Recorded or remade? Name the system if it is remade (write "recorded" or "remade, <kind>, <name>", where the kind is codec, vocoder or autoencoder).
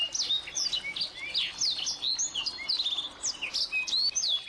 recorded